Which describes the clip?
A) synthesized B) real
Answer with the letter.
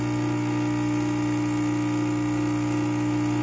B